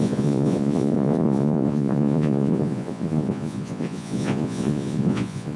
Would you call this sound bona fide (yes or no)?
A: no